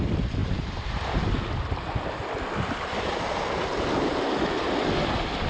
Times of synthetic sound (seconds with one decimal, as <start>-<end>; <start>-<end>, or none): 0.4-1.3